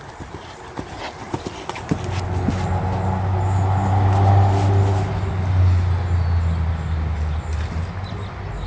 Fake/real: real